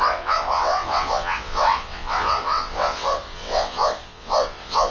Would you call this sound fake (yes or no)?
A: yes